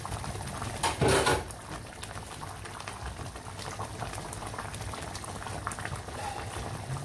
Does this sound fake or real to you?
real